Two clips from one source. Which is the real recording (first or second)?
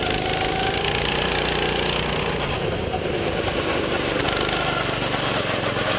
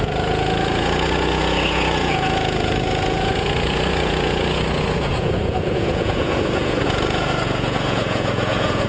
first